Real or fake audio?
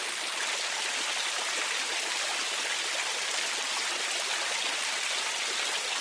real